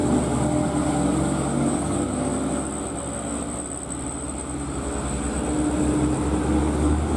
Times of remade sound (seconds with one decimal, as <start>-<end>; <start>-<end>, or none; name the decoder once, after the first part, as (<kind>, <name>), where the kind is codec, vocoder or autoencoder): 0.9-2.3 (codec, DAC); 6.6-7.2